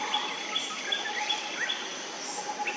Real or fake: real